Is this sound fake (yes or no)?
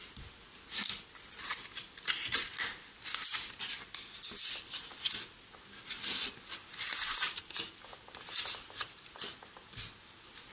no